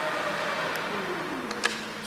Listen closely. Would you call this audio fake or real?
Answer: real